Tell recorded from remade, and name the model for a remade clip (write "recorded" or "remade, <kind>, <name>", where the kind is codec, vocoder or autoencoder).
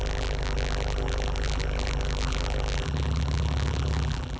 remade, vocoder, BigVGAN v2